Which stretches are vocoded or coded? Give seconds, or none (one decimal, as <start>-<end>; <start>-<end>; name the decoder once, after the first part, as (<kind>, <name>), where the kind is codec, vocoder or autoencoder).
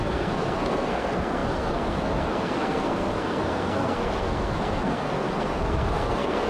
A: 0.0-6.5 (codec, SNAC)